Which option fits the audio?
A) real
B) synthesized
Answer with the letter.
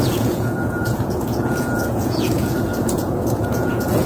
B